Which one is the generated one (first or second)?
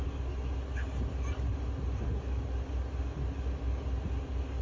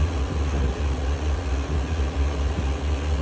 second